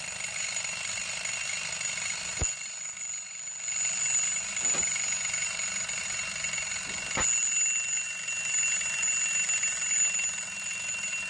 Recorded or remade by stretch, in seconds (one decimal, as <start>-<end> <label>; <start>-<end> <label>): 0.0-11.3 recorded